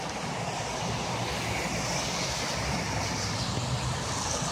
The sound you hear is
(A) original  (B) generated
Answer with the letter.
A